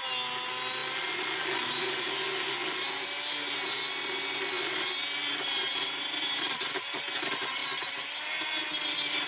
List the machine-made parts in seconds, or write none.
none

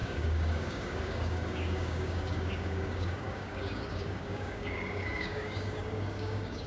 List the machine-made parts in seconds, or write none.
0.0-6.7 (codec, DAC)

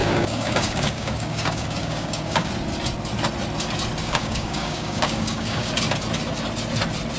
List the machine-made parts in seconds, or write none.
0.0-2.5 (codec, DAC); 4.0-5.7

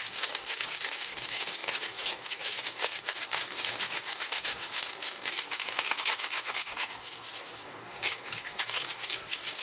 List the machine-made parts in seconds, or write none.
0.0-9.6 (codec, DAC)

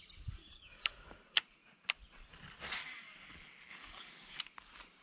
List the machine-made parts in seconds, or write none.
0.4-1.1 (codec, DAC); 2.8-3.3; 3.7-4.4

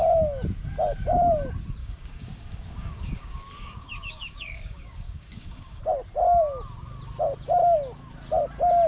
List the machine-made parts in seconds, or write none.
1.8-5.8 (codec, DAC)

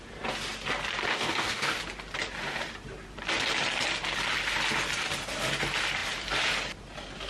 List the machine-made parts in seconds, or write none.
1.1-1.8 (codec, DAC)